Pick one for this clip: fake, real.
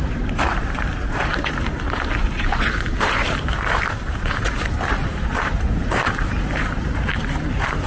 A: fake